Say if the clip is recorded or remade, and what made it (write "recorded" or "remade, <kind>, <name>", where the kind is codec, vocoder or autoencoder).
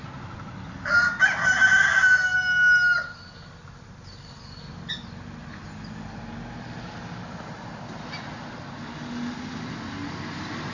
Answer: recorded